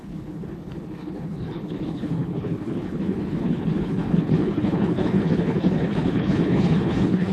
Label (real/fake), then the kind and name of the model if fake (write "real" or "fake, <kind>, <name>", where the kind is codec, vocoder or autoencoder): fake, codec, HILCodec